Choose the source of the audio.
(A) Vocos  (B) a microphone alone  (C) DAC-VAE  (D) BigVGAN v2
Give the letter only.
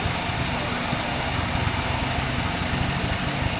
B